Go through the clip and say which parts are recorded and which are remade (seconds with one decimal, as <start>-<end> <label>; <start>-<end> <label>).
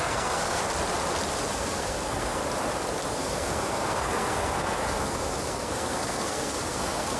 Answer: 0.0-0.6 remade; 0.6-1.5 recorded; 1.5-2.4 remade; 2.4-3.1 recorded; 3.1-7.2 remade